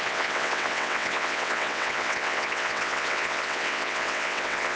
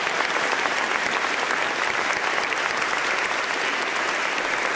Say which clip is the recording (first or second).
second